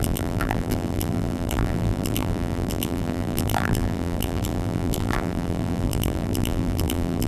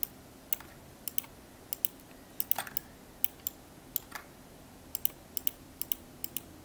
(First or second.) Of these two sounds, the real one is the second